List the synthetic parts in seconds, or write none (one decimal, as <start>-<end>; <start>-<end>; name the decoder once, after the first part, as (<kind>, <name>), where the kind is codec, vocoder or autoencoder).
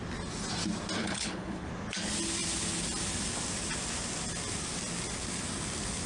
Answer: 1.0-1.7 (codec, HILCodec)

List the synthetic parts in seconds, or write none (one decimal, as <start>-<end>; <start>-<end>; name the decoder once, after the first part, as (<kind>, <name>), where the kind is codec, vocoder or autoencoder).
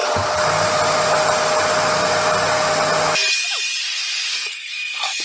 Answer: 4.3-5.2 (codec, SNAC)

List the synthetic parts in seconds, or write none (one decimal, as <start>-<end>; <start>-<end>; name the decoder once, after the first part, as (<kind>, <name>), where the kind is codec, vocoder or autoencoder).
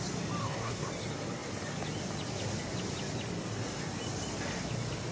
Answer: 0.4-0.9 (codec, SNAC)